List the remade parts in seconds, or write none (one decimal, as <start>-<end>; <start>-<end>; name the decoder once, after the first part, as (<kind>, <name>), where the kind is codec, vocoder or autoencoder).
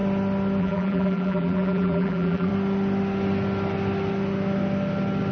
0.6-2.5 (vocoder, BigVGAN v2)